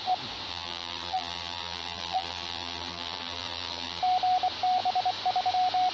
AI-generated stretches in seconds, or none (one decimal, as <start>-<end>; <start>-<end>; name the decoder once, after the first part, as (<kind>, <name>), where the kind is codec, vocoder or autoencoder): 0.5-4.0 (vocoder, BigVGAN v2)

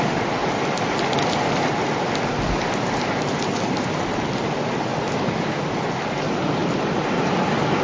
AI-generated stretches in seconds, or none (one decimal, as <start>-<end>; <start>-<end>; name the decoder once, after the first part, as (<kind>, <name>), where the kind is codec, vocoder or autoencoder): 0.4-1.9 (vocoder, BigVGAN v2); 4.9-6.0; 6.6-7.3

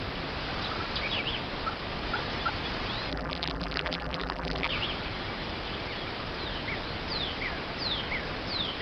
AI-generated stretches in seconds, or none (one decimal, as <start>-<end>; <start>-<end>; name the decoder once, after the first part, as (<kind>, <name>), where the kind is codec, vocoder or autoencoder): 3.1-4.7 (vocoder, BigVGAN v2)

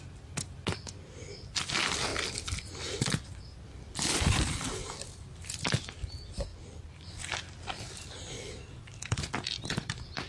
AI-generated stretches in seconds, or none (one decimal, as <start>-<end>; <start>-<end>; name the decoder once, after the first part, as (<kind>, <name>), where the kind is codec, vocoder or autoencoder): 2.1-5.0 (vocoder, BigVGAN v2); 6.5-10.3

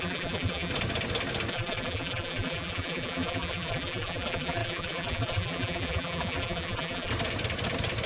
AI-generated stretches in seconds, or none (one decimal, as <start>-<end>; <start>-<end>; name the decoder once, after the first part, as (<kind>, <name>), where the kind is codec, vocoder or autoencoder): 0.0-0.7 (vocoder, BigVGAN v2); 1.5-7.1

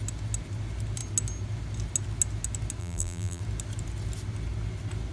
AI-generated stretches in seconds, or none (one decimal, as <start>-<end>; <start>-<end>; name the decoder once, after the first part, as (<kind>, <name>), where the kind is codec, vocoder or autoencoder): 2.8-3.4 (vocoder, BigVGAN v2)

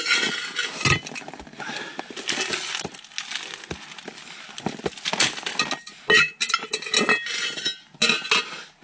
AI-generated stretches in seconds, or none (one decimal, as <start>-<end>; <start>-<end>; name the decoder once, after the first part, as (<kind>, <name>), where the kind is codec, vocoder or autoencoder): none

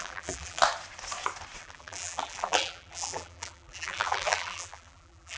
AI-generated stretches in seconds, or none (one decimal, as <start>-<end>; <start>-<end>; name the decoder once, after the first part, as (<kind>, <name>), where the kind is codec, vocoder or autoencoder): 0.0-0.6 (vocoder, BigVGAN v2); 1.6-5.4